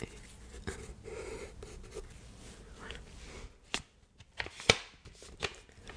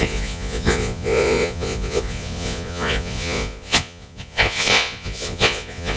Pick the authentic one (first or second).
first